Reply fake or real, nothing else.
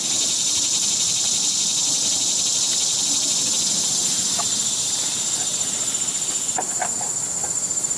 real